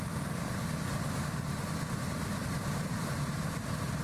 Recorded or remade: remade